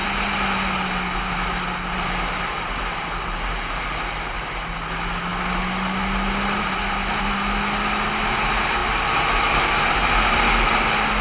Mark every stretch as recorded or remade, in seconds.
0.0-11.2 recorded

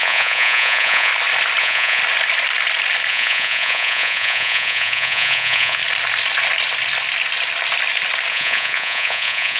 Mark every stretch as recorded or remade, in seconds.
0.0-1.1 remade; 1.1-1.6 recorded; 1.6-2.0 remade; 2.0-3.1 recorded; 3.1-5.8 remade; 5.8-8.3 recorded; 8.3-9.6 remade

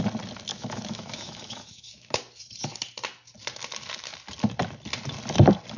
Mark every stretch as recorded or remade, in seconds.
0.0-0.5 recorded; 0.5-2.2 remade; 2.2-5.8 recorded